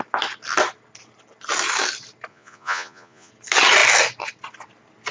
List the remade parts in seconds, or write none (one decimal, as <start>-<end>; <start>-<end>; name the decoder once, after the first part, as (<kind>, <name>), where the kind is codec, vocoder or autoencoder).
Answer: 2.3-3.3 (vocoder, Vocos)

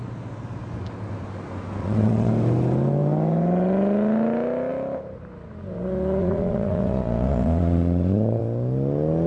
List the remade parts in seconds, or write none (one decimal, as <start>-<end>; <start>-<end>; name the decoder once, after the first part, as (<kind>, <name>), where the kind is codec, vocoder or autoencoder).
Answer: 1.8-2.3 (vocoder, Vocos); 6.2-8.4

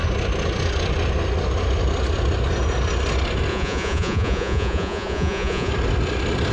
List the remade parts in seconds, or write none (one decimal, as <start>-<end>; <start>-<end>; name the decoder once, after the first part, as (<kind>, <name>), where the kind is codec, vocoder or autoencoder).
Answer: 3.5-5.7 (vocoder, Vocos)

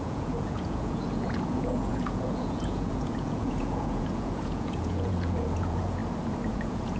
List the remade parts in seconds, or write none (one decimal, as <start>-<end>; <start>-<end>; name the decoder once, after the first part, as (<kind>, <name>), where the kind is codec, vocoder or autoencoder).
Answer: 0.0-6.0 (vocoder, Vocos); 6.5-7.0

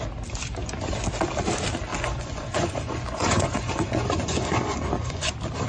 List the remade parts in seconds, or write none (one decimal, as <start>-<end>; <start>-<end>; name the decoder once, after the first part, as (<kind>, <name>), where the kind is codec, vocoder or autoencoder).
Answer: 1.9-5.3 (vocoder, Vocos)

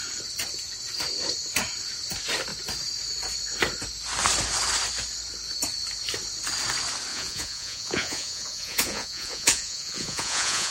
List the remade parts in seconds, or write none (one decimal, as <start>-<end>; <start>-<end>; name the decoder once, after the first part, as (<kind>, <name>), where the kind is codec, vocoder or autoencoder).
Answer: 7.1-10.7 (vocoder, Vocos)

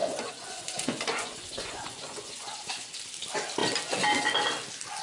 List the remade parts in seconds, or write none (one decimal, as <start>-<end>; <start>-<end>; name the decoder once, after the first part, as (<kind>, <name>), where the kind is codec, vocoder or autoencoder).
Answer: 0.0-3.0 (vocoder, Vocos)

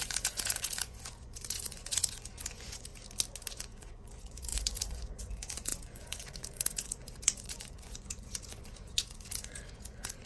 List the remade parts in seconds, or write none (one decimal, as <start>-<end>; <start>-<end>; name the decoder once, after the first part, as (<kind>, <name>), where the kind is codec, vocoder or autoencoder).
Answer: 0.0-2.9 (vocoder, Vocos); 3.5-10.3